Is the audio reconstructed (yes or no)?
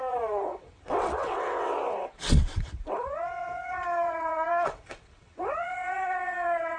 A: yes